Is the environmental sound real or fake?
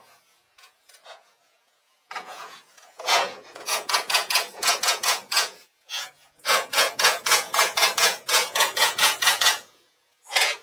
fake